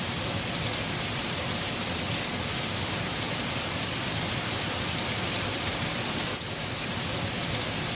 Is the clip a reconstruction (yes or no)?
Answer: no